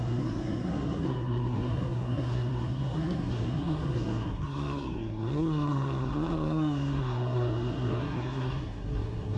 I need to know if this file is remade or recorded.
remade